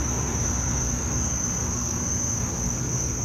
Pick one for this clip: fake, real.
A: fake